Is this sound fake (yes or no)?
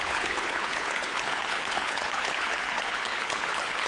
yes